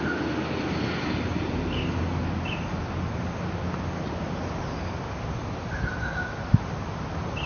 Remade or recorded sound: recorded